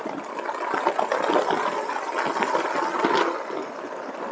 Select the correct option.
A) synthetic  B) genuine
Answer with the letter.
A